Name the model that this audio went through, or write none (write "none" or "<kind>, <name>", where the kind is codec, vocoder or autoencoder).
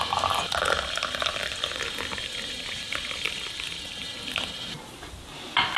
none